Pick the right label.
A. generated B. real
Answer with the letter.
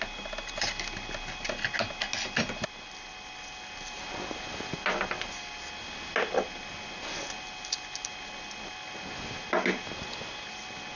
B